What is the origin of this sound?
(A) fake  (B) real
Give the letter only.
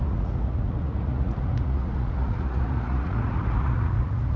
A